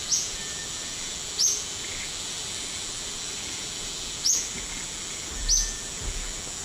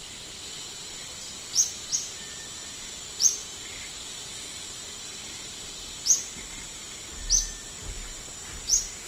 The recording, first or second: second